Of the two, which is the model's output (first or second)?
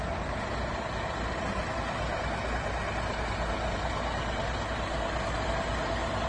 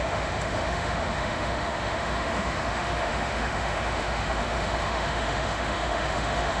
second